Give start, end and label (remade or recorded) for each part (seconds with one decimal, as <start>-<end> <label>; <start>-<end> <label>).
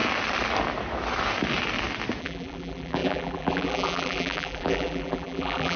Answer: 0.0-2.2 recorded; 2.2-5.8 remade